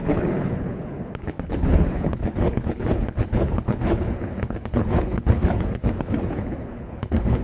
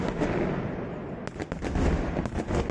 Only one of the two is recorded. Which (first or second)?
second